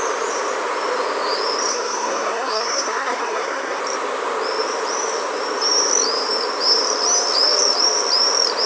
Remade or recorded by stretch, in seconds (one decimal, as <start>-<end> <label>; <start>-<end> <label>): 0.0-1.7 recorded; 1.7-3.8 remade; 3.8-8.7 recorded